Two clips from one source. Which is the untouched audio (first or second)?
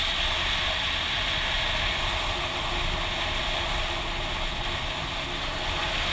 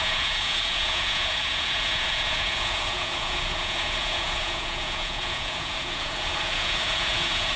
first